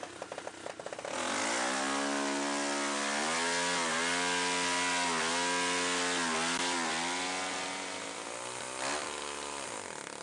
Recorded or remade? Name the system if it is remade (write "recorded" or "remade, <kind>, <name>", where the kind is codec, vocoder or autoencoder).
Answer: recorded